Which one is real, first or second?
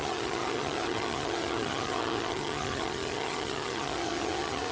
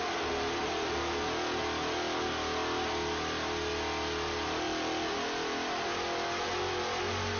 second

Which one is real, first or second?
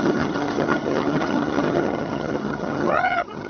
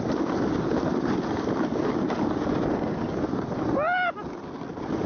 second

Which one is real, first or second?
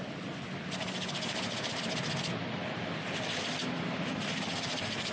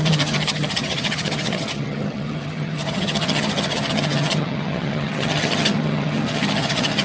first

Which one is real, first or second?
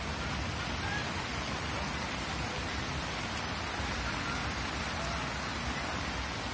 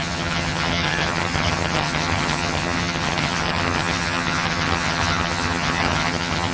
first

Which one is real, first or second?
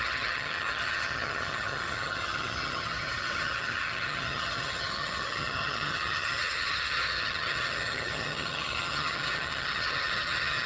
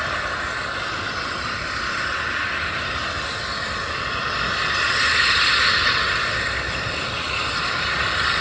second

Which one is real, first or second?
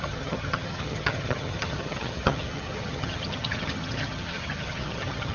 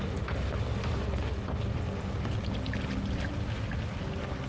second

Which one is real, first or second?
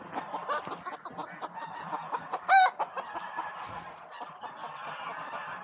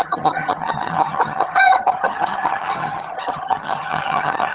first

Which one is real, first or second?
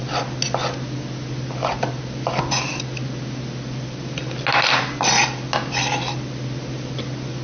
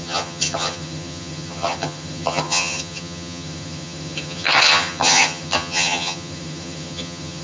first